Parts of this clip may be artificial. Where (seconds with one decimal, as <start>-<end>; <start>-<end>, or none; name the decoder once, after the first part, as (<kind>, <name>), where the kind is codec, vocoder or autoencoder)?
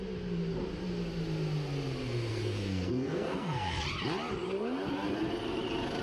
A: 2.3-3.8 (codec, SNAC)